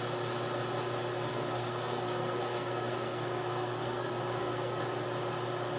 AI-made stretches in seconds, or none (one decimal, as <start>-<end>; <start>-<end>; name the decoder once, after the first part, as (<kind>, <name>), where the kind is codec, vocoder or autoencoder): 1.3-4.8 (codec, SNAC)